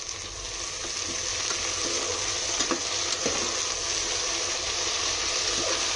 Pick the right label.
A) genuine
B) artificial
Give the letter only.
A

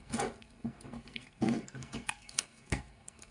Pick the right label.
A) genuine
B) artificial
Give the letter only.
B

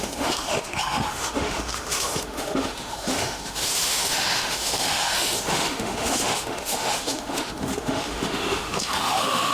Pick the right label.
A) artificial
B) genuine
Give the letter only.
A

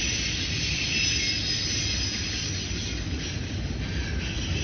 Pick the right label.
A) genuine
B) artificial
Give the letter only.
A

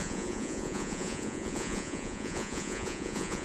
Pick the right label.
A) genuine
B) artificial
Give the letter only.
B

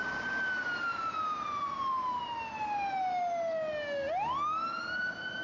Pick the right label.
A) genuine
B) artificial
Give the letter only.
A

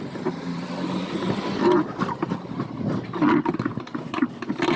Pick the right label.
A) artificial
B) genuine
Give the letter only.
B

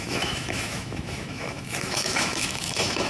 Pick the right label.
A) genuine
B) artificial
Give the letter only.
B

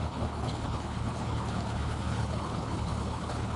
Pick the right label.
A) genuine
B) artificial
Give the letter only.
B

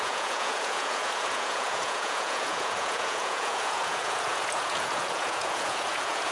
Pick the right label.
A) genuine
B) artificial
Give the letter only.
B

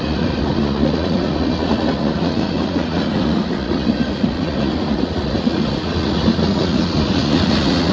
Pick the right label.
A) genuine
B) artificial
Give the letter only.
B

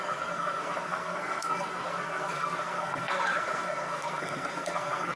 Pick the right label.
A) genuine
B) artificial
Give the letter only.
B